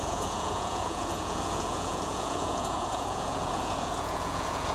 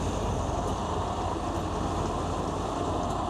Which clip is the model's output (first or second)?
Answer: first